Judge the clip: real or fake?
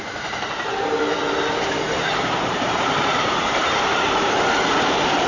fake